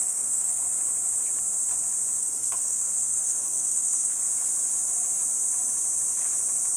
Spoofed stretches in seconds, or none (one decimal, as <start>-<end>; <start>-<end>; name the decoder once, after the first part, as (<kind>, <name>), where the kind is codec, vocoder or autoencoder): 0.0-0.6 (codec, SNAC); 2.2-4.2